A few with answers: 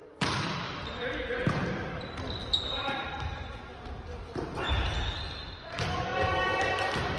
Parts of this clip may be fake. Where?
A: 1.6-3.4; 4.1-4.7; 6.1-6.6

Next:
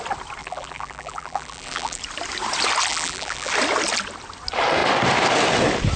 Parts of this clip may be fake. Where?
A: 0.4-2.0; 2.9-3.5

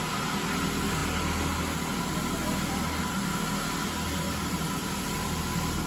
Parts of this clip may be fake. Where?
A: none

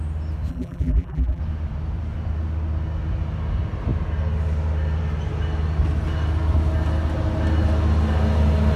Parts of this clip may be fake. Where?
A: 0.5-1.4